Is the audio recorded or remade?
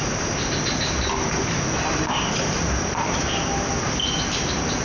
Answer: recorded